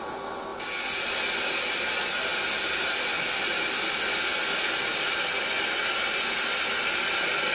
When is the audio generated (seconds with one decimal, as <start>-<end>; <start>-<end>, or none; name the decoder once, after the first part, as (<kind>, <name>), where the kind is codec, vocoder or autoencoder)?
none